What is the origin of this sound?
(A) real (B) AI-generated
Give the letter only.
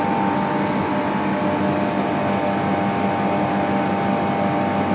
A